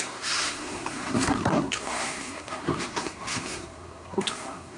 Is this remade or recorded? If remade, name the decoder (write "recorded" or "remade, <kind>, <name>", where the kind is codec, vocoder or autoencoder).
remade, codec, SNAC